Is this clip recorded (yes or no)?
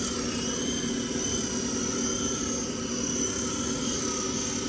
yes